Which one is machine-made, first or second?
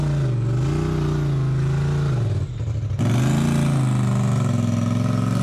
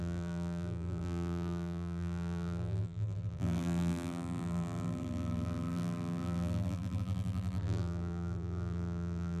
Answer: second